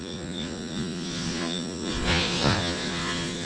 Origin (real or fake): fake